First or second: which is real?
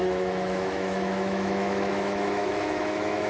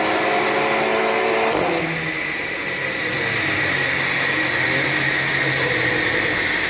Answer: second